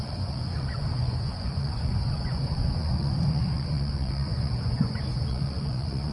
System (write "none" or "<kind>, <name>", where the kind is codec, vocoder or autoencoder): vocoder, Vocos